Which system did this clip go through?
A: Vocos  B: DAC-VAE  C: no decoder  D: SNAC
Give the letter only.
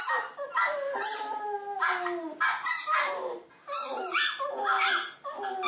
C